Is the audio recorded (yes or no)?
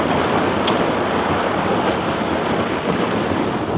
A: yes